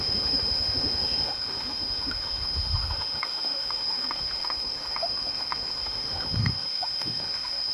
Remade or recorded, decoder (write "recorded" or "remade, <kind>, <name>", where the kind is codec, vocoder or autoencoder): remade, autoencoder, DAC-VAE